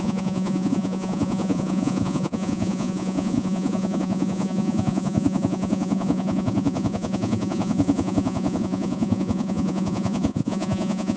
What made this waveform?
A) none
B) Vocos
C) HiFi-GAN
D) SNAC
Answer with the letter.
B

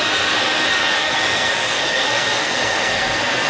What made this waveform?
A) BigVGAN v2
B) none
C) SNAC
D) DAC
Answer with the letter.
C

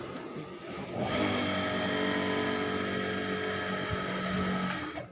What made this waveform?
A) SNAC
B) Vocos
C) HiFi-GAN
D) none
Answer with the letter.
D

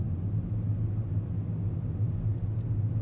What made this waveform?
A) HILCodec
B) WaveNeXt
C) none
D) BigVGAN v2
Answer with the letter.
C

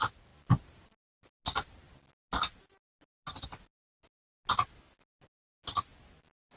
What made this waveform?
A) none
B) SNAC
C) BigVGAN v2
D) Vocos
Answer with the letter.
A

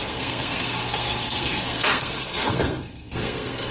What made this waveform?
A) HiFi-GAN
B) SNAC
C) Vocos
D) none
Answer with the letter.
B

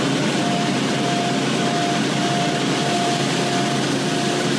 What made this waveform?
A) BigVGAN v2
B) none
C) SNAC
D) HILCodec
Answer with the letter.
B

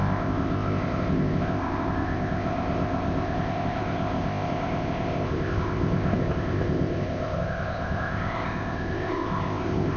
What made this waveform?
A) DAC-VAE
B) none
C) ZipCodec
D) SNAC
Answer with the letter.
C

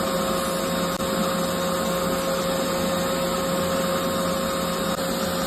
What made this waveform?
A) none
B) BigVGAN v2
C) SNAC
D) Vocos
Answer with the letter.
A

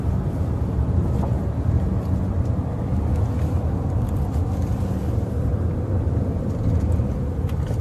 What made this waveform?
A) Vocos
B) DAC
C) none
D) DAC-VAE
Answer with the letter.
C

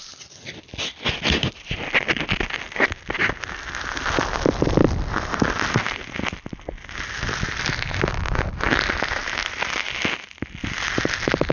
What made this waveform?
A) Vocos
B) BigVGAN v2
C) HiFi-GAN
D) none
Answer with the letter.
D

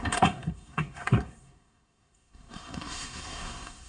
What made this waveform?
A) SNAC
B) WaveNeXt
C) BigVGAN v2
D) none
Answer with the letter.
A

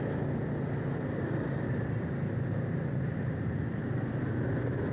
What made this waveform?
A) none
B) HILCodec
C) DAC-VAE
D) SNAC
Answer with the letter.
A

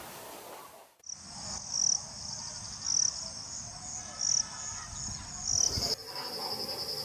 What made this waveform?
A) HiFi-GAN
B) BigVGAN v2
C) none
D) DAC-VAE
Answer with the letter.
C